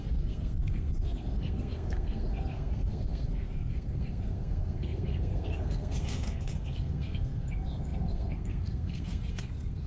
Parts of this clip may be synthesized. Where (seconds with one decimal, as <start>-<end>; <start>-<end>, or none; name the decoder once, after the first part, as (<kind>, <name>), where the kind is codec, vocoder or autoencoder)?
0.0-9.9 (codec, SNAC)